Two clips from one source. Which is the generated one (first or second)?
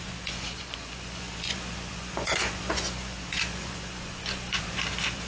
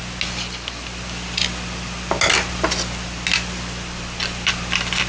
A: first